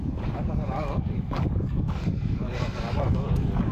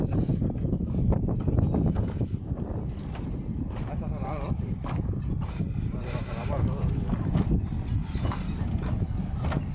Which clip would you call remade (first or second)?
first